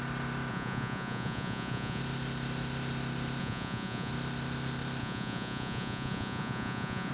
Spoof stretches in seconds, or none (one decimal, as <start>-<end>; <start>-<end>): 0.5-2.0; 3.4-4.1; 5.0-7.1